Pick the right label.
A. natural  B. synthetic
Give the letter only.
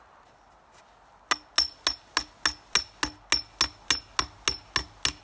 A